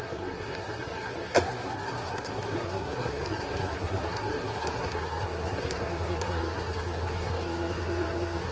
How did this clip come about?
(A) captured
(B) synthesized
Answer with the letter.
B